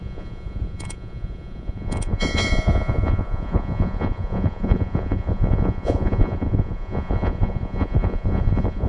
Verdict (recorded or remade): remade